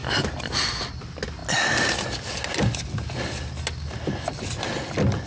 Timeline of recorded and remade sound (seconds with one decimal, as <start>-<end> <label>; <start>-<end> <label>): 0.0-5.3 recorded